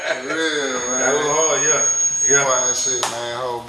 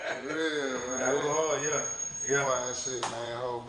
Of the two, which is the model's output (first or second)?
second